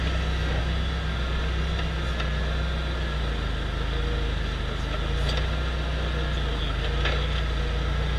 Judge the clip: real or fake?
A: real